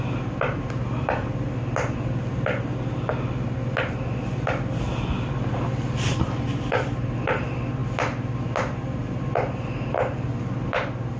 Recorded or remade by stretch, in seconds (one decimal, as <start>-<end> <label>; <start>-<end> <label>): 0.0-11.2 recorded